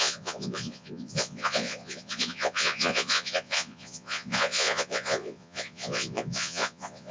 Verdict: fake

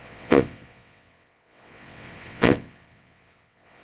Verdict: fake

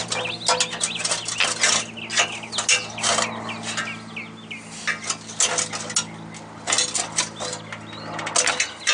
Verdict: real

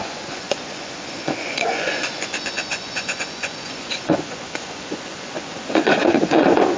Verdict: fake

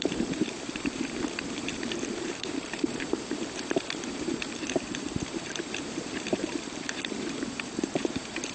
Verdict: fake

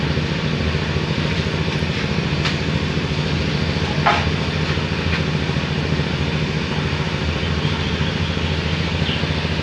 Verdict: real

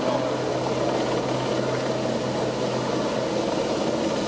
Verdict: real